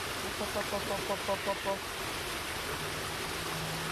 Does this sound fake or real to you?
real